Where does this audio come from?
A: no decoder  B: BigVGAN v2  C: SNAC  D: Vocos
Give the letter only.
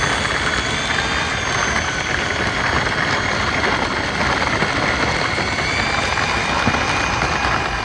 A